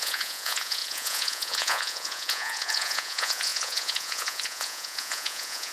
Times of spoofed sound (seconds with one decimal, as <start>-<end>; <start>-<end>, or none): 0.0-5.7